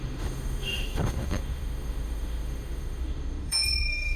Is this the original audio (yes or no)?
no